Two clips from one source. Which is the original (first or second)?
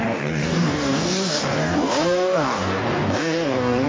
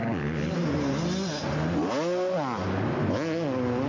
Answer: second